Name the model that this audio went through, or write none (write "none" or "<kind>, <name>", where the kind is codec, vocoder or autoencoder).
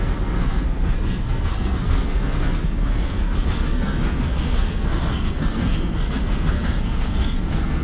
codec, SNAC